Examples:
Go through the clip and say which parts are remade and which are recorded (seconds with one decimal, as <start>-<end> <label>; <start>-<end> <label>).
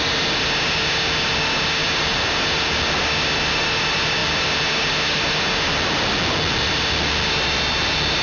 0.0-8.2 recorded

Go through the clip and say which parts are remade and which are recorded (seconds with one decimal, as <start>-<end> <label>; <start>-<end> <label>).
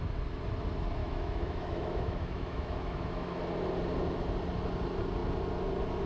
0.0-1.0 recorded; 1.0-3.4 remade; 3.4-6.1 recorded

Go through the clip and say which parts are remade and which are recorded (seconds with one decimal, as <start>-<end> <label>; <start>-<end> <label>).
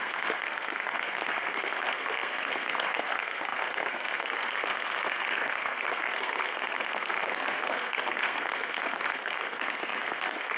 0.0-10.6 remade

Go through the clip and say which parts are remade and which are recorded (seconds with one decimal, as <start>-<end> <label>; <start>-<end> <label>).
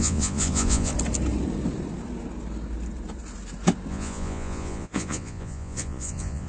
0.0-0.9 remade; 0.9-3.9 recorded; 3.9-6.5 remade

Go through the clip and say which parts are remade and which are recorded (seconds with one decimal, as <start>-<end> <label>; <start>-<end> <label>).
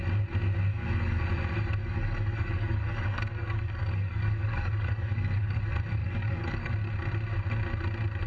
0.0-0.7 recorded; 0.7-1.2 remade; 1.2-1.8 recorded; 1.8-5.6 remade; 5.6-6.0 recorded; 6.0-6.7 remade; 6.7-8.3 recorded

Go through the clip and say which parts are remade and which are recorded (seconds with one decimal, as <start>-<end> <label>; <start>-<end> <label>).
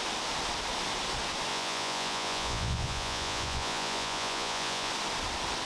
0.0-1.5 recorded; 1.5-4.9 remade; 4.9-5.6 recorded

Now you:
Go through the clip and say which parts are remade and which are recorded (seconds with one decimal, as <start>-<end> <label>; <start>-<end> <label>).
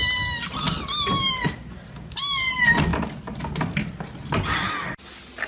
0.0-5.5 recorded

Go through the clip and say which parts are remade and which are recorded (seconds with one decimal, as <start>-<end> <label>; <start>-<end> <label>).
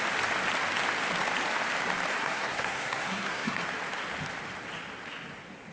0.0-2.2 recorded; 2.2-3.6 remade; 3.6-5.7 recorded